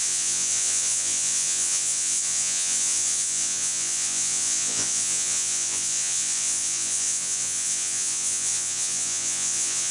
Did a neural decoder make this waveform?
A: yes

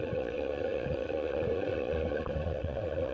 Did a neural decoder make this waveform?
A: yes